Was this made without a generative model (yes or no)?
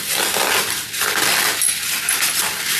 yes